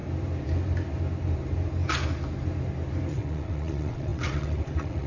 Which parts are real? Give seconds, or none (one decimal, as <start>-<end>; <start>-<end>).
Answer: 0.0-3.1

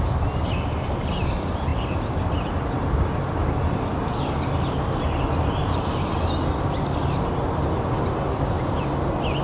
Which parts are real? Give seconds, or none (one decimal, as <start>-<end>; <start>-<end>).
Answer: 0.0-9.4

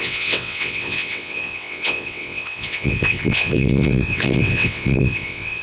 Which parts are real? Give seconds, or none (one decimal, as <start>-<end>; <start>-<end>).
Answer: none

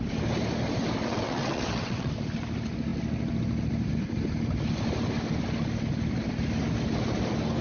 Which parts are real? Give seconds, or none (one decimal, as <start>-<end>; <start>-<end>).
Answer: 0.0-1.1; 2.1-7.6

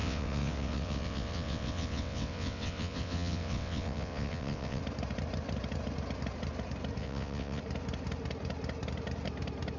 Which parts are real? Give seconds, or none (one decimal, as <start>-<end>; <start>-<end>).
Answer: 4.8-7.0; 7.6-9.8

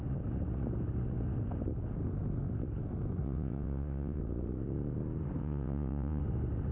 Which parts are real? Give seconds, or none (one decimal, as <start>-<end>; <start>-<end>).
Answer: 0.0-3.2; 4.2-5.4; 6.2-6.7